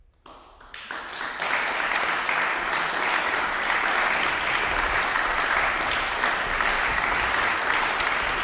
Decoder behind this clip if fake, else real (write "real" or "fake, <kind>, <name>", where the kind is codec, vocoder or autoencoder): real